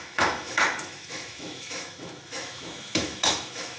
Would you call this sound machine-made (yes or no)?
yes